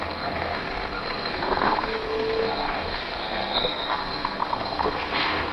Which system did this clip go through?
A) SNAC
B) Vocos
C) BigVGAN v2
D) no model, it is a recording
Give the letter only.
A